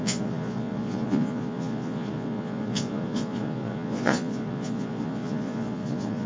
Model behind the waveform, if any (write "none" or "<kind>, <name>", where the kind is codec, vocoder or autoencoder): vocoder, Vocos